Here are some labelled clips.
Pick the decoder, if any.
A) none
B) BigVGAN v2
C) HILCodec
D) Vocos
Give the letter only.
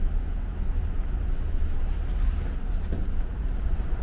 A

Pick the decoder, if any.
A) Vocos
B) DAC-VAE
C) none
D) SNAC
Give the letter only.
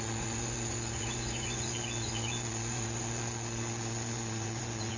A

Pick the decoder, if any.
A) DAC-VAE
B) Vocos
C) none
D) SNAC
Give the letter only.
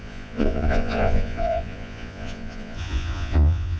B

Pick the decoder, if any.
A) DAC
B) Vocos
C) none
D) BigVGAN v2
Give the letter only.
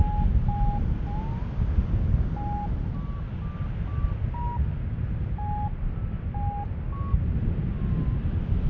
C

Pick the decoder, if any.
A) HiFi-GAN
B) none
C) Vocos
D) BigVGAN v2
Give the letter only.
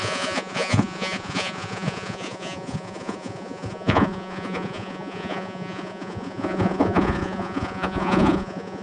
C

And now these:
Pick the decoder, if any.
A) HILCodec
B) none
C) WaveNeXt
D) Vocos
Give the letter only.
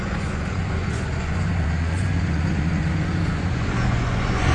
D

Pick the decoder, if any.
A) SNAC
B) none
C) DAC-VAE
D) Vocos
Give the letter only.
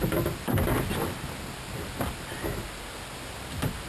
B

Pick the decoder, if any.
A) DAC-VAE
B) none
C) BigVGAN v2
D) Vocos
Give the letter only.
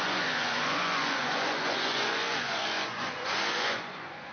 D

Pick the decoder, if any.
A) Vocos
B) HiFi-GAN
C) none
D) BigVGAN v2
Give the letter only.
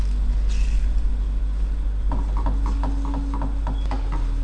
C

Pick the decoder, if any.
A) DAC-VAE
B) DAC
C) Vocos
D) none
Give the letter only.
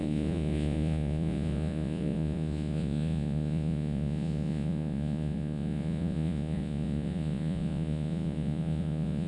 C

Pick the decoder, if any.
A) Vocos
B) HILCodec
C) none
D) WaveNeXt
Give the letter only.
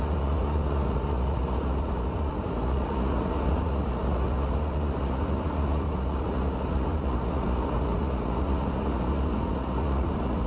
A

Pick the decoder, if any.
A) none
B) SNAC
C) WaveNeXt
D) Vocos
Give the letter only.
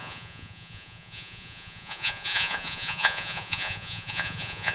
D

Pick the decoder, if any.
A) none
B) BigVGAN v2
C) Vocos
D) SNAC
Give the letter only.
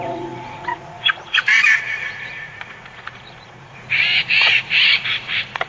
C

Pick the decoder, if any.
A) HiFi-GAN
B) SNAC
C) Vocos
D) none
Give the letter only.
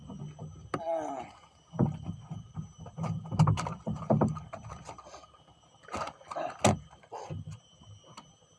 D